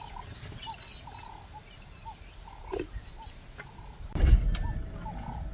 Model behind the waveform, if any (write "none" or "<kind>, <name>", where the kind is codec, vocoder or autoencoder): none